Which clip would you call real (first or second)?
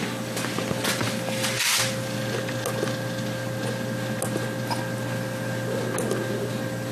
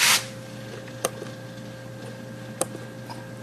first